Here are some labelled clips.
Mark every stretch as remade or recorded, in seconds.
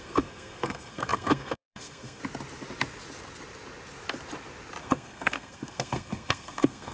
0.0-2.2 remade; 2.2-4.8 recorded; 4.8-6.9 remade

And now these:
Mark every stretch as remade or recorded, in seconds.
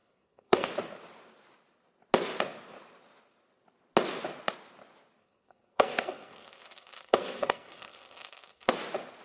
0.0-0.7 remade; 0.7-5.2 recorded; 5.2-8.7 remade; 8.7-9.2 recorded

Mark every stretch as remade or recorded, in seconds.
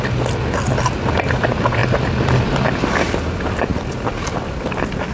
0.0-5.1 recorded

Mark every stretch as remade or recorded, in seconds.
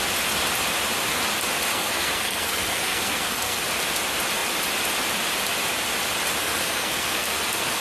0.0-1.7 recorded; 1.7-3.6 remade; 3.6-6.4 recorded; 6.4-7.8 remade